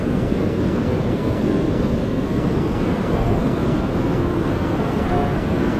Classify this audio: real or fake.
fake